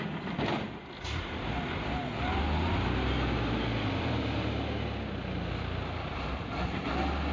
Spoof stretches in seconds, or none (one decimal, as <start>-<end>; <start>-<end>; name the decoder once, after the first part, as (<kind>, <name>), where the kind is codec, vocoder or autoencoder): none